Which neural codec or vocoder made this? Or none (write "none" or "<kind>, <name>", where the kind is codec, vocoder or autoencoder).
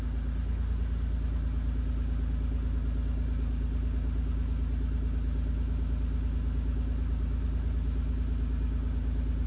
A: none